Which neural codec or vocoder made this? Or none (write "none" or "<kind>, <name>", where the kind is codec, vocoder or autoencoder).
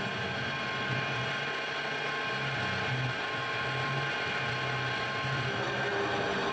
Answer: none